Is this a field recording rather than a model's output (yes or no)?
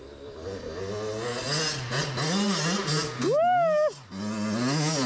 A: yes